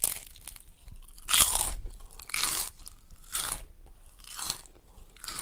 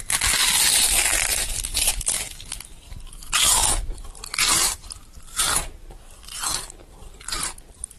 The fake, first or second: second